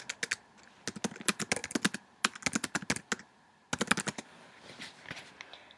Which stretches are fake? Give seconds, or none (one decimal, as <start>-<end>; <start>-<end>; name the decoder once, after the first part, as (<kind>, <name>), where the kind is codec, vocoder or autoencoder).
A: none